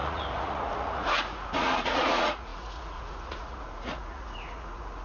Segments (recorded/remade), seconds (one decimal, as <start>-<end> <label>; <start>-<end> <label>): 0.0-5.0 remade